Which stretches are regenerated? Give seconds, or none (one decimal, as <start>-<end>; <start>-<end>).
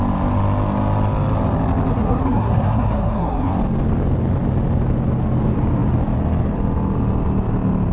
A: 1.9-3.5